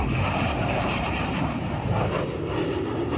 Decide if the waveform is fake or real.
fake